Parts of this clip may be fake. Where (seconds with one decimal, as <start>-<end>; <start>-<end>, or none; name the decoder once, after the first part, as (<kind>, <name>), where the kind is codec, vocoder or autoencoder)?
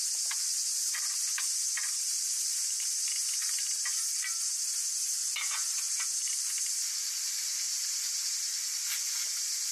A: 0.0-3.8 (vocoder, BigVGAN v2); 6.3-7.7; 8.3-9.7